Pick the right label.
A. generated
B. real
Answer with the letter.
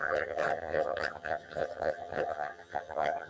A